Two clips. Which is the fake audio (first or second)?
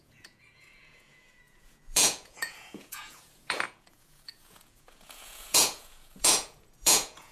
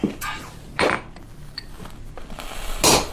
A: first